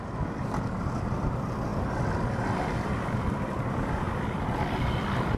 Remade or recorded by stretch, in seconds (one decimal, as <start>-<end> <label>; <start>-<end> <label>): 0.0-1.7 recorded; 1.7-4.5 remade; 4.5-5.4 recorded